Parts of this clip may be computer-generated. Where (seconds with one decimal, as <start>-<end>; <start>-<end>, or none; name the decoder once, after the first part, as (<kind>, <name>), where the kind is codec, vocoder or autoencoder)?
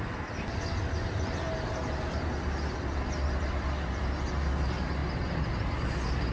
none